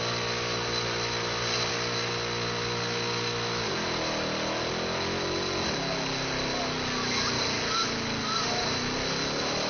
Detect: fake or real real